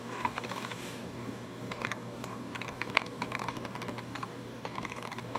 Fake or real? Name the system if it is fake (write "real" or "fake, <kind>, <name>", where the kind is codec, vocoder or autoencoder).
fake, codec, DAC